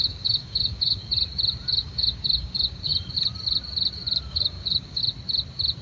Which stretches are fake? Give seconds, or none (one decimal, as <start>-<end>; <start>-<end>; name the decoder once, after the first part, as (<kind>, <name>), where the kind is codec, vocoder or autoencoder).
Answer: 0.0-1.0 (codec, DAC); 1.6-2.9; 4.3-5.0